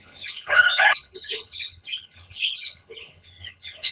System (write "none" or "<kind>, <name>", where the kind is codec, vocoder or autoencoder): codec, HILCodec